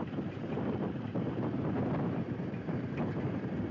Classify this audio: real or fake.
fake